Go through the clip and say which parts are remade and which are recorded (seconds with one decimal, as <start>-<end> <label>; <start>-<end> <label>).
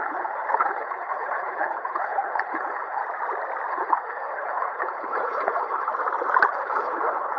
0.0-3.0 remade; 3.0-3.7 recorded; 3.7-5.9 remade; 5.9-6.5 recorded; 6.5-7.4 remade